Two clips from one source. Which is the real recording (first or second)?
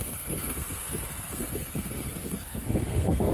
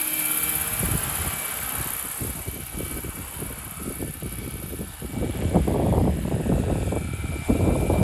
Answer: second